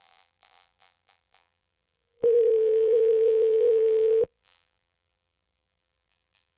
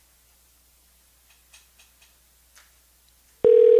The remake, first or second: first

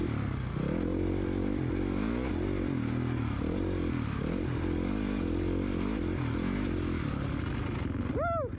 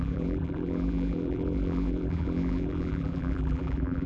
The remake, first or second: second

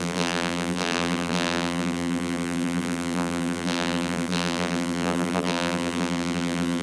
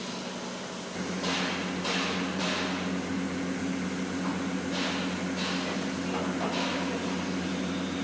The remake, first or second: first